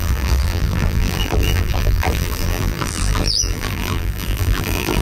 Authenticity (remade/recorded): remade